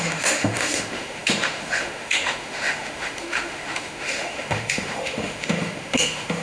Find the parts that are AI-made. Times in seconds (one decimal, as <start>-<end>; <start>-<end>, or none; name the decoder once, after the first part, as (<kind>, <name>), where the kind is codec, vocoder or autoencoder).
0.0-6.4 (autoencoder, DAC-VAE)